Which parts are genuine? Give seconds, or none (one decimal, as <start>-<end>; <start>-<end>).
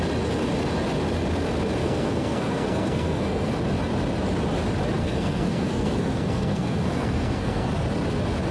0.0-1.8; 3.5-5.0; 7.7-8.5